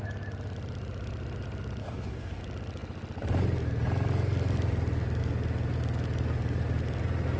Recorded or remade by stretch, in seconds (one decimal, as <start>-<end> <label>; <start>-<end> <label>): 0.0-1.8 recorded; 1.8-2.4 remade; 2.4-7.4 recorded

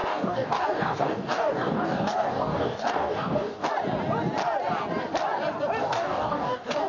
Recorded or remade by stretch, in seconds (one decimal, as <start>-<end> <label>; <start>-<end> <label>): 0.0-3.7 remade; 3.7-5.8 recorded; 5.8-6.9 remade